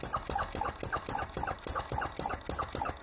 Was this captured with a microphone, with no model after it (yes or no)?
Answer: yes